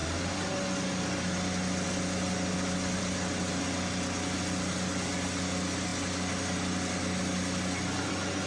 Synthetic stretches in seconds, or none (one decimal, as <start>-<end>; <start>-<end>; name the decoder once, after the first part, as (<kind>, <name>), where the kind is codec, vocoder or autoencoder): none